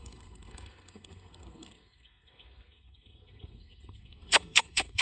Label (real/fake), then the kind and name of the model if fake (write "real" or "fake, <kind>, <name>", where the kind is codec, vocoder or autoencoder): fake, codec, SNAC